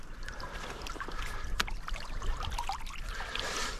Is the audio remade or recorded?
recorded